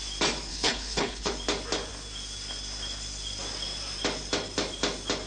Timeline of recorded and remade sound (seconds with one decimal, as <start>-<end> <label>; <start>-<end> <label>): 0.0-0.5 recorded; 0.5-1.3 remade; 1.3-5.3 recorded